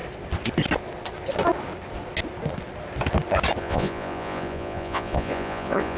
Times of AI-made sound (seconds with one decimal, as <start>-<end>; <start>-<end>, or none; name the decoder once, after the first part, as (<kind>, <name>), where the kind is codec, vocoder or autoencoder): 3.6-6.0 (vocoder, Vocos)

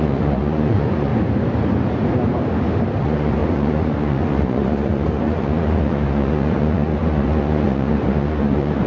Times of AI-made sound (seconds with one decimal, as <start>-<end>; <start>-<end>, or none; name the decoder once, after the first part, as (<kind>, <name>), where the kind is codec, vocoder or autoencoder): 0.0-1.1 (vocoder, Vocos); 3.0-8.9

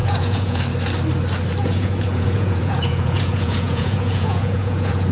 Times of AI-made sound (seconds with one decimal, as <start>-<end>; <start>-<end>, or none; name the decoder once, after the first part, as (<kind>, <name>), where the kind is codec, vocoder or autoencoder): 0.0-0.6 (vocoder, Vocos); 1.6-5.1

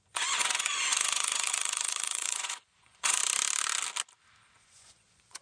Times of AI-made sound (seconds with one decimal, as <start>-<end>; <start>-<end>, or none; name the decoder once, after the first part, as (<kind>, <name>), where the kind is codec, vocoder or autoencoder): 0.0-3.2 (vocoder, Vocos); 4.5-5.4

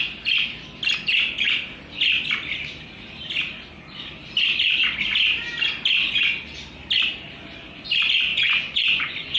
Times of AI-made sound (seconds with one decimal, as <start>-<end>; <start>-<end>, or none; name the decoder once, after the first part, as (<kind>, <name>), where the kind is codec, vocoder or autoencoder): 8.3-9.4 (vocoder, Vocos)